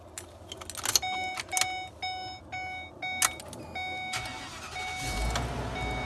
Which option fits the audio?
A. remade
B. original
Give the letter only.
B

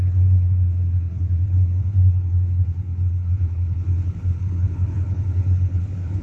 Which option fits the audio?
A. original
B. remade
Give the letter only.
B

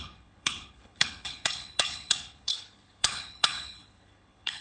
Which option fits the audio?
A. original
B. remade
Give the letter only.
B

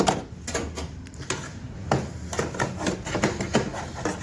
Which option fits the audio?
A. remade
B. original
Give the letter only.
B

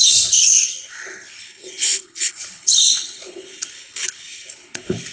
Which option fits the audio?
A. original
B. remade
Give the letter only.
B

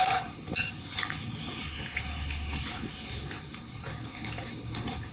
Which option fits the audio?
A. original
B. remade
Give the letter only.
B